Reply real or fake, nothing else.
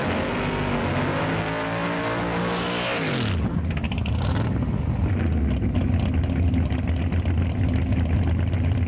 real